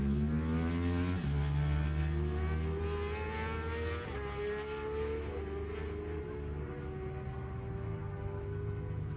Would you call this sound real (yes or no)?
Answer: yes